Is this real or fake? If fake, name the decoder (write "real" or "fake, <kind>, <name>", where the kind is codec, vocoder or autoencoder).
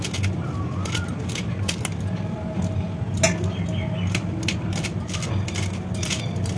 real